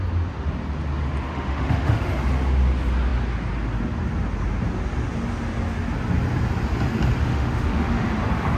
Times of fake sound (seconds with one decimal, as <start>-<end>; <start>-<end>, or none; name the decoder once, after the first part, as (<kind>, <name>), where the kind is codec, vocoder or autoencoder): 1.3-2.1 (autoencoder, DAC-VAE); 7.2-8.1